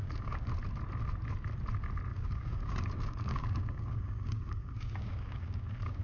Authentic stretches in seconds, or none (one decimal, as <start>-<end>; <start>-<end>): 0.5-2.1